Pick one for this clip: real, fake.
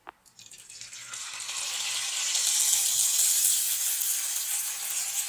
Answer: real